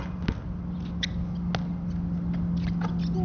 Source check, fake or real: real